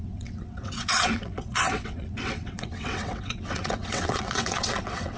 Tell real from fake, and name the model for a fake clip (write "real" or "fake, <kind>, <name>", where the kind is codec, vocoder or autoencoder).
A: fake, vocoder, WaveNeXt